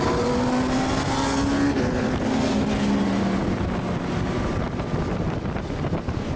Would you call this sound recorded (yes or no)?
yes